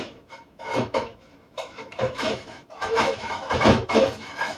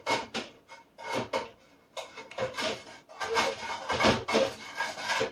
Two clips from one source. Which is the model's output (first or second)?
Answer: first